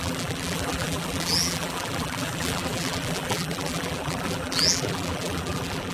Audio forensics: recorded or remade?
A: remade